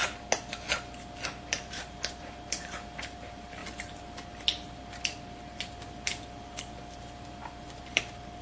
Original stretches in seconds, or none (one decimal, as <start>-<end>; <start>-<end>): 0.0-0.5; 3.6-6.6